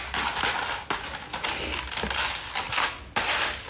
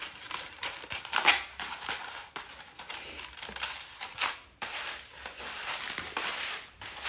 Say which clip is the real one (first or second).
first